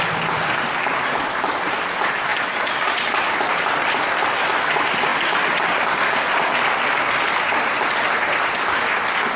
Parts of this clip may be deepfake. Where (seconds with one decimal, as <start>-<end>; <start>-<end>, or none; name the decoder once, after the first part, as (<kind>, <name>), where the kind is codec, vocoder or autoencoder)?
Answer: 2.3-3.5 (vocoder, BigVGAN v2)